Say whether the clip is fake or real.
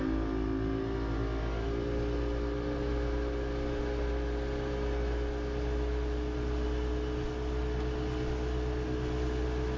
real